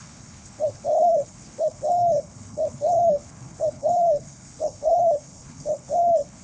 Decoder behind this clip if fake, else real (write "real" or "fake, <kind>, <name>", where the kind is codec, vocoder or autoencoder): fake, codec, HILCodec